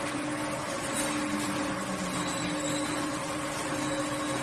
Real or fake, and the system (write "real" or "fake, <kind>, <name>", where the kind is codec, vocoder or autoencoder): real